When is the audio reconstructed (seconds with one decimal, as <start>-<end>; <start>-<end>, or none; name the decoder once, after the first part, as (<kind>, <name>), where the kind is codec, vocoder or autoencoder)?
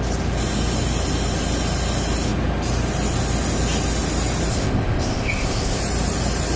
4.5-5.8 (codec, ZipCodec)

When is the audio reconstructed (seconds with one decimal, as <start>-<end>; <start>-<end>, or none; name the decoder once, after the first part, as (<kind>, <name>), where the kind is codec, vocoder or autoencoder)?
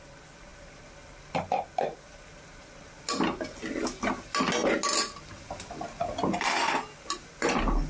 none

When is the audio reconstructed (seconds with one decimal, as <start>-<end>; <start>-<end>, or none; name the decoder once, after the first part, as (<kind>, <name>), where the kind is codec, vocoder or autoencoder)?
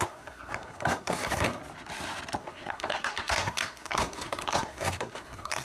0.0-1.6 (codec, SNAC); 2.4-5.6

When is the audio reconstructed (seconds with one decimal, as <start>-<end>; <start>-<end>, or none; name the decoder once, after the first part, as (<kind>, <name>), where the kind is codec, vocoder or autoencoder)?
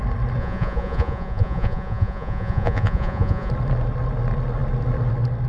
0.4-3.5 (vocoder, Vocos)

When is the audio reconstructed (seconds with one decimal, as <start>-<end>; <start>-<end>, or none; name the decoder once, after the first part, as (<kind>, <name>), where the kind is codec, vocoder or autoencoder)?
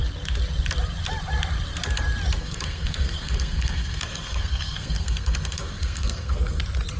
2.4-6.6 (codec, SNAC)